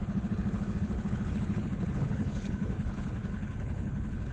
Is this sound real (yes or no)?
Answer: no